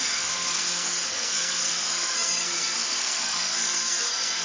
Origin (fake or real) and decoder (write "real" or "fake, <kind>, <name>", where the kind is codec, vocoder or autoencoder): fake, codec, SNAC